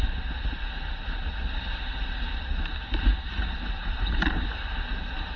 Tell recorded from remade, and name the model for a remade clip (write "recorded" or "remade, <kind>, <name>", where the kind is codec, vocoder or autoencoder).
recorded